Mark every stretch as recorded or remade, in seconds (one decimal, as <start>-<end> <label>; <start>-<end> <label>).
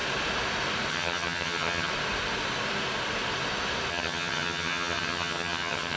0.0-0.9 recorded; 0.9-1.9 remade; 1.9-3.9 recorded; 3.9-6.0 remade